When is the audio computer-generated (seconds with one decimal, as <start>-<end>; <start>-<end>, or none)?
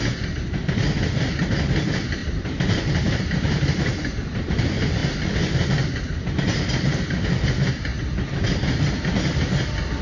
2.2-4.5